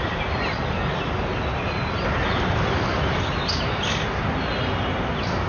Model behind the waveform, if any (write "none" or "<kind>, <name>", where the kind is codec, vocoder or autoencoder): none